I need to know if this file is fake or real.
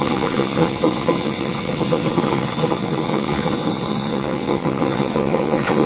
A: fake